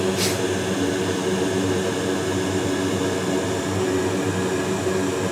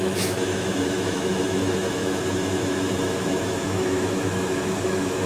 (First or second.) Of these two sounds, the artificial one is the second